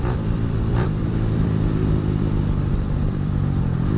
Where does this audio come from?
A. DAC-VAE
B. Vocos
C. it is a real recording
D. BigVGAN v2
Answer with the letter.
D